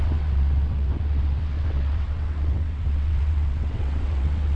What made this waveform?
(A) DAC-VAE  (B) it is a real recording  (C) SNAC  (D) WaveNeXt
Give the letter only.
D